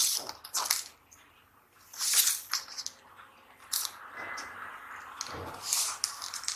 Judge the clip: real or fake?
real